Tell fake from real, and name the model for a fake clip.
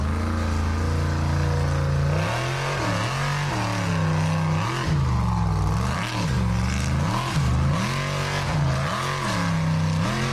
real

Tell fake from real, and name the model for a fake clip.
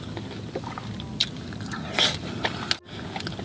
real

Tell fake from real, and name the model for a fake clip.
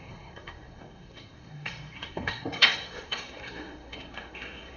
fake, codec, SNAC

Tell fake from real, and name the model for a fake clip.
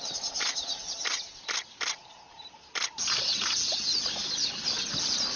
real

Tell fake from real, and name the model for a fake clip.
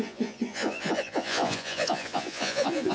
fake, vocoder, Vocos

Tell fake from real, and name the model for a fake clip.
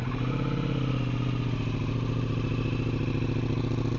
real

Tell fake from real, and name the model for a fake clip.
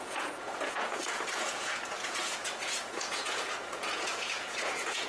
fake, vocoder, Vocos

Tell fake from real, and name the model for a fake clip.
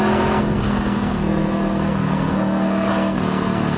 fake, codec, SNAC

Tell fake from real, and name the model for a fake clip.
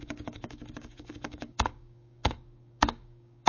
fake, codec, DAC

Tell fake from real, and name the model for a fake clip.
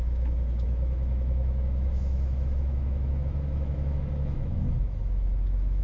fake, autoencoder, DAC-VAE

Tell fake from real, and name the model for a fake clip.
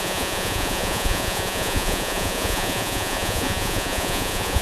fake, vocoder, Vocos